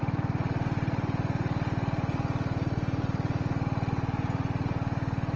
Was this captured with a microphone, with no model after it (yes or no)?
yes